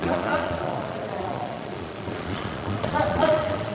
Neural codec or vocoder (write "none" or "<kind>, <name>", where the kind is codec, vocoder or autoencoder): vocoder, Vocos